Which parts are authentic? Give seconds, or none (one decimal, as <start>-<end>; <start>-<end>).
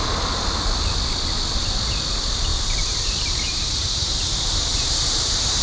0.0-2.5; 4.1-4.7